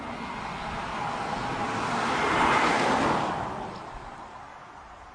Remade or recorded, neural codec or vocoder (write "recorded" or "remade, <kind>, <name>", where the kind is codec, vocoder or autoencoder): recorded